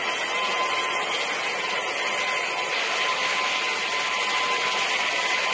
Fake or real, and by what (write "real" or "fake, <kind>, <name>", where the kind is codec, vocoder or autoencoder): real